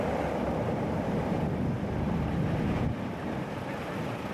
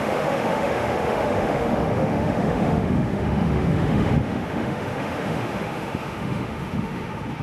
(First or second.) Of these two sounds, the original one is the first